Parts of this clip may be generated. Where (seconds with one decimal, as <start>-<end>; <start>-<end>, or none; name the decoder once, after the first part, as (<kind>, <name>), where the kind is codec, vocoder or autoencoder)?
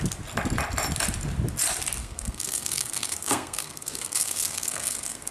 2.0-5.3 (codec, SNAC)